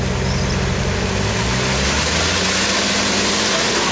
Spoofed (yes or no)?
no